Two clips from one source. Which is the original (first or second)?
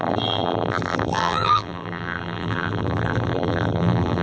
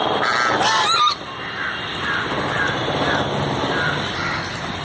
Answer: second